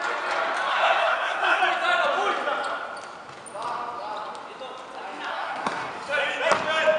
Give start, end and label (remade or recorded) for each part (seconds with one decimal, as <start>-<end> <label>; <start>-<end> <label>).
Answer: 0.0-0.7 recorded; 0.7-1.6 remade; 1.6-5.3 recorded; 5.3-5.9 remade; 5.9-7.0 recorded